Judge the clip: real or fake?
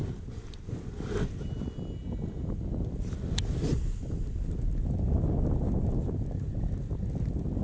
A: real